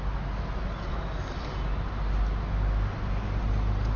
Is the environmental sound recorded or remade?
recorded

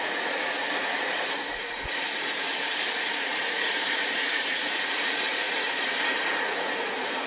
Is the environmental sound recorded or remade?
remade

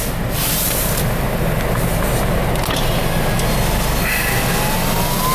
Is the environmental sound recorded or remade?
recorded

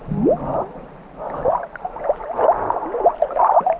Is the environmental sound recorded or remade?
recorded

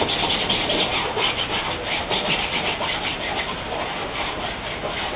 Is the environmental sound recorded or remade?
recorded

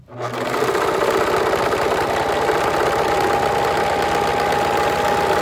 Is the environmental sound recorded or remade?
recorded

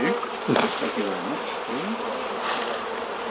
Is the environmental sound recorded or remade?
recorded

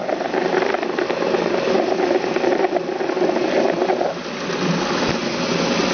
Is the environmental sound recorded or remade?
recorded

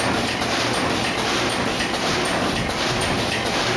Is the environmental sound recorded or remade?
recorded